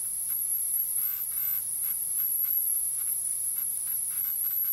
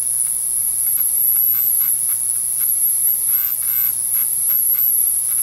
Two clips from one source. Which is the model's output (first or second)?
first